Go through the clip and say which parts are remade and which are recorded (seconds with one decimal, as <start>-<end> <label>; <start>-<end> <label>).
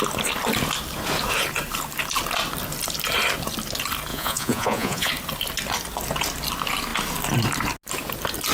0.0-4.1 recorded; 4.1-5.1 remade; 5.1-8.5 recorded